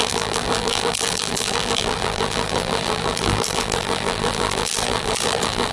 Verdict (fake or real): fake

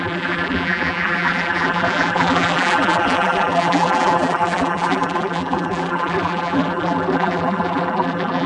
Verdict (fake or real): fake